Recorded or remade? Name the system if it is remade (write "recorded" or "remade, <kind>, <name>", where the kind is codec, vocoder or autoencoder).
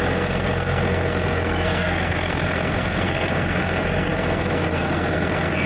remade, codec, SNAC